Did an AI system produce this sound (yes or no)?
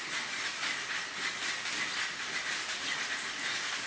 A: no